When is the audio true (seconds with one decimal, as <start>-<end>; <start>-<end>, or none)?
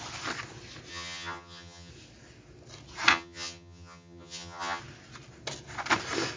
0.0-0.9; 1.9-3.1; 4.8-6.4